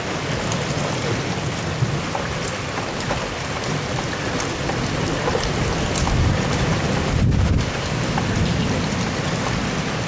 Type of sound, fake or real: real